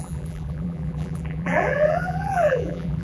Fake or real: fake